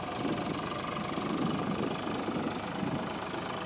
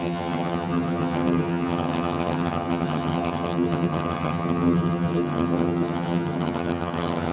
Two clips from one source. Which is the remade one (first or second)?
second